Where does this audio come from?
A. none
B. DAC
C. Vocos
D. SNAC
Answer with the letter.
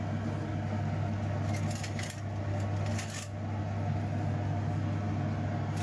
A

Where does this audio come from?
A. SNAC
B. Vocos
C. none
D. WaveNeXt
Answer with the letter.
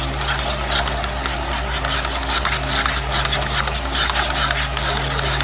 C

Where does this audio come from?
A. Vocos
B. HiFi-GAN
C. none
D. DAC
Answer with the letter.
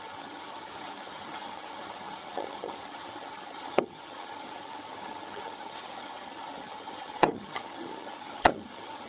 B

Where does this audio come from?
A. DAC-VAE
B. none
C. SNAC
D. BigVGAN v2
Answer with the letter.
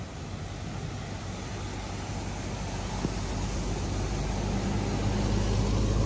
B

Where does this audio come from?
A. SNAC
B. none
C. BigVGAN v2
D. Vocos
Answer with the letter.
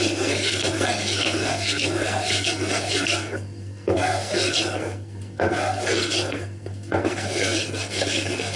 A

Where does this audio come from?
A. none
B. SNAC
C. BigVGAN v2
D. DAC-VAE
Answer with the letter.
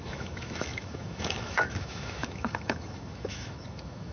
D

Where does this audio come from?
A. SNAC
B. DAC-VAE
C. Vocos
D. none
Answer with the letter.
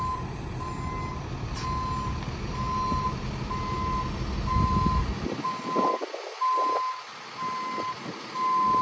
D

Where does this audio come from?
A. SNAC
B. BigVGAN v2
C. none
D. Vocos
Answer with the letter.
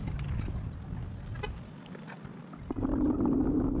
C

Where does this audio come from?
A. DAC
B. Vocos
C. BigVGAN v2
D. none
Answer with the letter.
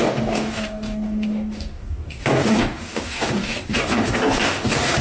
A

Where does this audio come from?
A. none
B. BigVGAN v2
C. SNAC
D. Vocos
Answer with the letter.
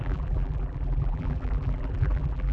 B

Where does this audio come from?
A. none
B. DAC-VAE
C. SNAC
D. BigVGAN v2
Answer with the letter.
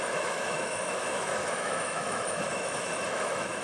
B